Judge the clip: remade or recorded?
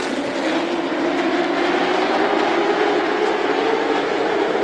recorded